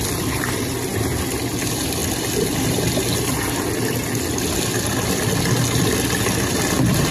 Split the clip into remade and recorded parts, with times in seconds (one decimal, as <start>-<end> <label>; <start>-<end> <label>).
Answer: 0.0-7.1 recorded